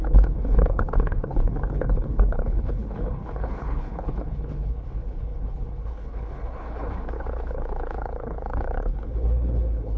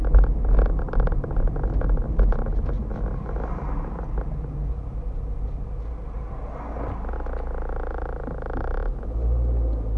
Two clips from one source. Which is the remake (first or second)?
first